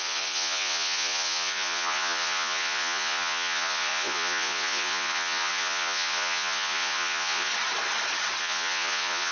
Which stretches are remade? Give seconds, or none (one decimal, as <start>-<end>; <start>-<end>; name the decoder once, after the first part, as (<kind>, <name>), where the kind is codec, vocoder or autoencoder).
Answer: 0.0-7.5 (vocoder, Vocos); 8.4-9.3